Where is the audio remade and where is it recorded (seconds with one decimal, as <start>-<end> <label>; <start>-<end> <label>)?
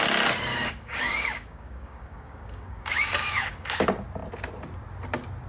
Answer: 0.0-0.5 recorded; 0.5-3.8 remade; 3.8-5.5 recorded